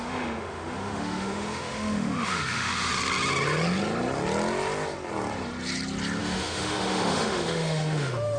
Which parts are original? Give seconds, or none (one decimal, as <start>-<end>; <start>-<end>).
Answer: 2.9-6.2